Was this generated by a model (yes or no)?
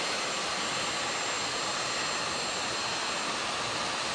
no